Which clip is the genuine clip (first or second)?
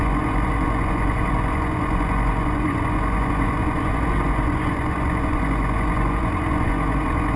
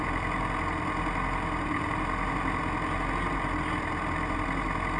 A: second